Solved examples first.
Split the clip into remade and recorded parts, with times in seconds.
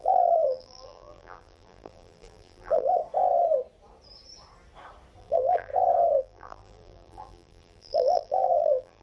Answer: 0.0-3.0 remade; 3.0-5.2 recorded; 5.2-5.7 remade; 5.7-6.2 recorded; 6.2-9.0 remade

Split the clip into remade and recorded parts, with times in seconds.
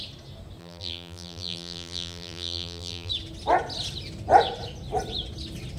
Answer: 0.0-0.6 recorded; 0.6-3.1 remade; 3.1-5.8 recorded